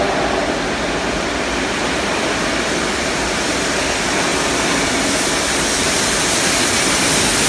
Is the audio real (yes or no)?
yes